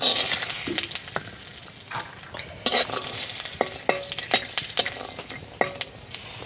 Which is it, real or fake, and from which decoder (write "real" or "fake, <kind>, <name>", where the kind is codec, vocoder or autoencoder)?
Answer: real